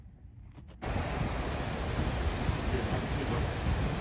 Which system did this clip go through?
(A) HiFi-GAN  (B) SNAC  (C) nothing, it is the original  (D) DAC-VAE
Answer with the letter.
C